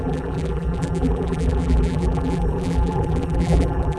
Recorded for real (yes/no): no